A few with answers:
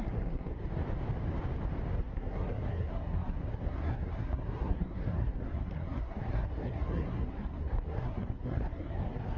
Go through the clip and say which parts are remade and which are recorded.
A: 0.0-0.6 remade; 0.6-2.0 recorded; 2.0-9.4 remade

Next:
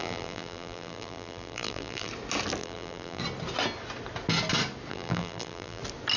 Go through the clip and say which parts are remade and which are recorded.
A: 0.0-2.1 remade; 2.1-2.6 recorded; 2.6-3.2 remade; 3.2-4.9 recorded; 4.9-5.8 remade; 5.8-6.2 recorded

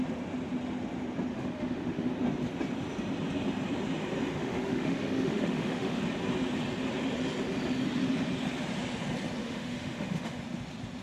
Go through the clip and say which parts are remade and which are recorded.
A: 0.0-1.3 recorded; 1.3-2.1 remade; 2.1-4.4 recorded; 4.4-6.0 remade; 6.0-9.4 recorded; 9.4-10.4 remade; 10.4-11.0 recorded

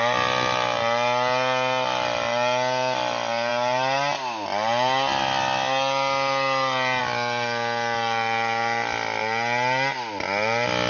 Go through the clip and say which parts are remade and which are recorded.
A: 0.0-10.9 recorded

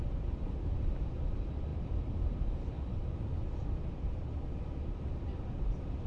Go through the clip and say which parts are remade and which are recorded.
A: 0.0-6.1 remade

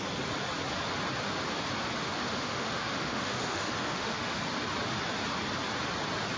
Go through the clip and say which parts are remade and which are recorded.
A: 0.0-2.0 recorded; 2.0-4.2 remade; 4.2-6.4 recorded